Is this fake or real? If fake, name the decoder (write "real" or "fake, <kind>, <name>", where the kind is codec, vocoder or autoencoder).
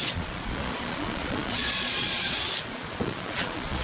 fake, vocoder, Vocos